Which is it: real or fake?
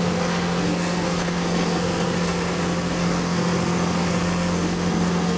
fake